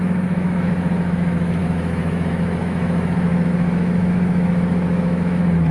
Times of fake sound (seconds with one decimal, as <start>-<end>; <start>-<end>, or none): 0.0-5.7